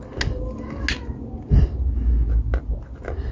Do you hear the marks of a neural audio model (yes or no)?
no